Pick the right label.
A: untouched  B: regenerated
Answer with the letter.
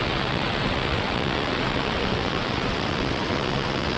B